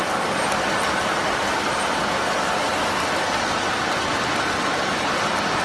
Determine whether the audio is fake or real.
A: real